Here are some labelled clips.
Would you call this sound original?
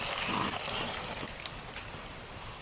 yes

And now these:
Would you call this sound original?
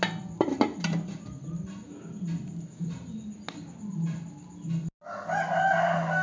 yes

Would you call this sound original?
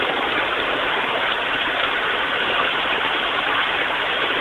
no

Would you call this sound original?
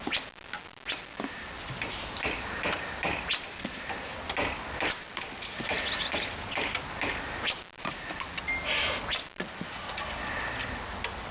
yes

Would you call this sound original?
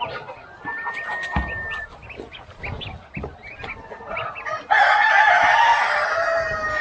yes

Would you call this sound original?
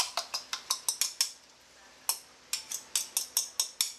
yes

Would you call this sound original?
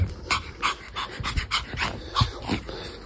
yes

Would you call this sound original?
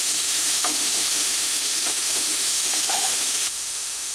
no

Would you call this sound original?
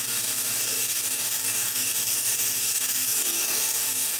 no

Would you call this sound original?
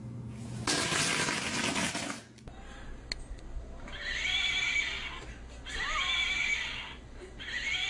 yes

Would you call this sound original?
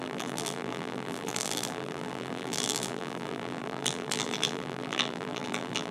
no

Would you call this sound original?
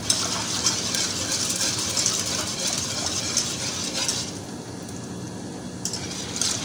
yes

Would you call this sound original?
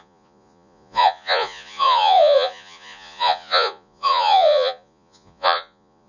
no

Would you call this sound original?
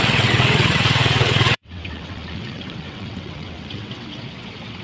no